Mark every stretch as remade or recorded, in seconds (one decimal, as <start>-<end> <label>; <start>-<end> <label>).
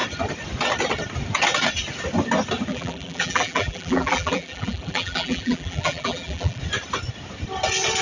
0.0-2.7 recorded; 2.7-6.6 remade; 6.6-8.0 recorded